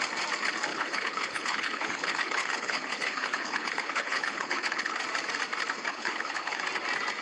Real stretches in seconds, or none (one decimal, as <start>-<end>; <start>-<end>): 0.0-0.7; 5.0-5.9; 6.6-7.2